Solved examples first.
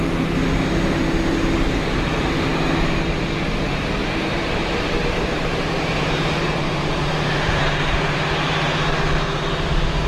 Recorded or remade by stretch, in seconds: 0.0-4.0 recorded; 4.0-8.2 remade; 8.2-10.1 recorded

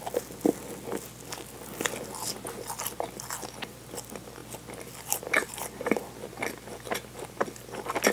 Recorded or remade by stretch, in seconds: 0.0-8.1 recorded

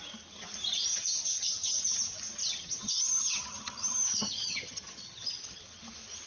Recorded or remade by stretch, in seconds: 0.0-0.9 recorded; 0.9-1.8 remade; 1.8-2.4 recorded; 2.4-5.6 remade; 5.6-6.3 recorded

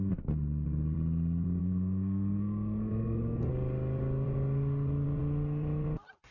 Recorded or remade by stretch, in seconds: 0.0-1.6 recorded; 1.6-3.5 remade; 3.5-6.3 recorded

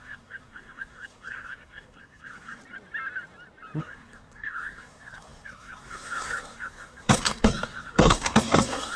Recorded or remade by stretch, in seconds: 0.0-2.6 remade; 2.6-3.8 recorded; 3.8-9.0 remade

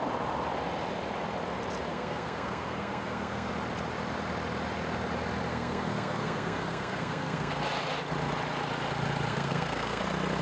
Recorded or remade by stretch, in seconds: 0.0-1.9 recorded; 1.9-3.5 remade; 3.5-5.5 recorded; 5.5-7.5 remade; 7.5-9.3 recorded; 9.3-10.0 remade; 10.0-10.4 recorded